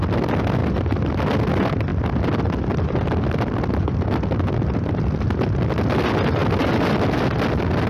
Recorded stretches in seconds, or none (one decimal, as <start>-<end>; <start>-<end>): 0.0-0.6; 1.1-1.9; 4.9-6.4; 6.9-7.9